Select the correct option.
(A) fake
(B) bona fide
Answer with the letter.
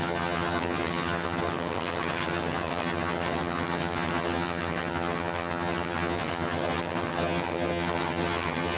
A